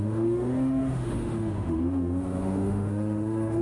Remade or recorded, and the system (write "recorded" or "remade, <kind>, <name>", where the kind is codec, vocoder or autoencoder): remade, autoencoder, DAC-VAE